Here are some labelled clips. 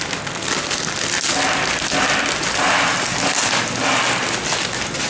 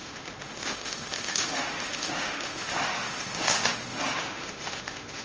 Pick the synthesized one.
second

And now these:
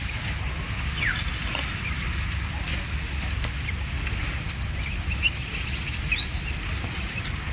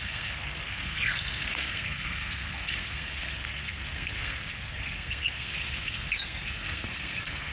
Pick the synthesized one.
second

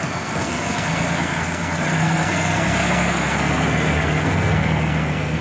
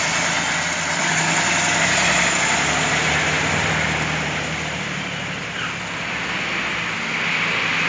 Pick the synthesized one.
first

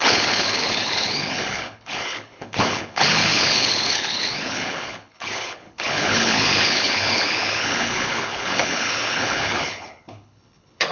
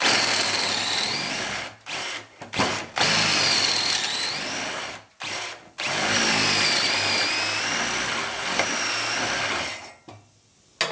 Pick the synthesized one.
first